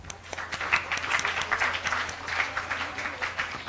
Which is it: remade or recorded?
recorded